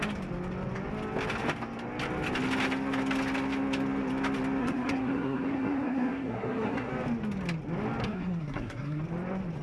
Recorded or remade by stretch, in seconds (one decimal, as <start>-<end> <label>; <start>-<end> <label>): 0.0-4.6 recorded; 4.6-6.9 remade; 6.9-8.0 recorded; 8.0-9.0 remade; 9.0-9.6 recorded